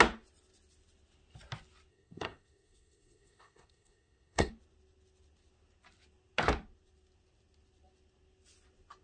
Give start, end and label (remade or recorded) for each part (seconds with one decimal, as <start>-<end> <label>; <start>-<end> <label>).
0.0-1.9 recorded; 1.9-4.5 remade; 4.5-9.0 recorded

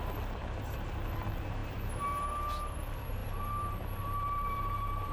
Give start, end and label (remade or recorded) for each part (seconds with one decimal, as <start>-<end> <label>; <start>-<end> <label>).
0.0-3.2 recorded; 3.2-5.1 remade

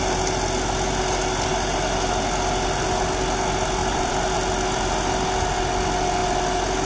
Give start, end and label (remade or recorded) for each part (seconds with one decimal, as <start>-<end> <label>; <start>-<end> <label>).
0.0-3.8 recorded; 3.8-4.5 remade; 4.5-6.9 recorded

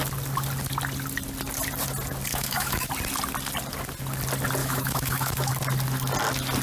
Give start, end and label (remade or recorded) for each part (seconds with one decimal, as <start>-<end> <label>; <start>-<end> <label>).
0.0-2.3 recorded; 2.3-2.9 remade; 2.9-4.6 recorded; 4.6-5.5 remade; 5.5-6.6 recorded

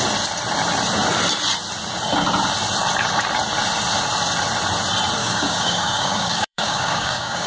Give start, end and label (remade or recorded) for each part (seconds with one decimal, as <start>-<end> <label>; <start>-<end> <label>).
0.0-5.2 recorded; 5.2-7.5 remade

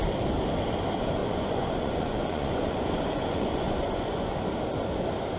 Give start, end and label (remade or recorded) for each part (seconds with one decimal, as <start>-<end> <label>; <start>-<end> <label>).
0.0-1.2 recorded; 1.2-4.4 remade; 4.4-5.4 recorded

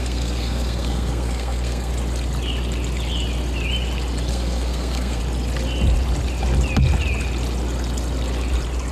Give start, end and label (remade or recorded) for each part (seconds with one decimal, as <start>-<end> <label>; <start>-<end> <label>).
0.0-1.9 remade; 1.9-4.3 recorded; 4.3-5.2 remade; 5.2-8.9 recorded